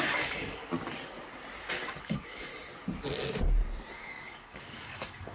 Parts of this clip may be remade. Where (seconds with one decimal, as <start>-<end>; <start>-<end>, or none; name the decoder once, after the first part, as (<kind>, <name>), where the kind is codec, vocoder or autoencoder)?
0.0-0.6 (codec, DAC); 2.0-2.5; 3.9-5.3